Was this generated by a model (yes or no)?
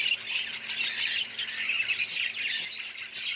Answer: no